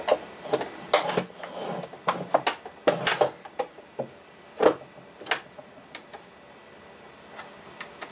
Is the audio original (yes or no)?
yes